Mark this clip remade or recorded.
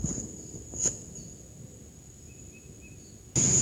recorded